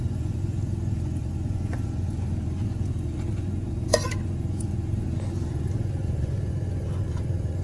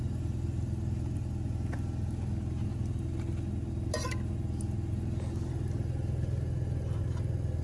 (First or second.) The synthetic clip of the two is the first